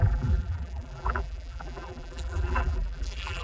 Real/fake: fake